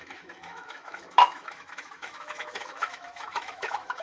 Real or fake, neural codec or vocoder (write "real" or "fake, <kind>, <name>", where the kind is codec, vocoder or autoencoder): fake, autoencoder, DAC-VAE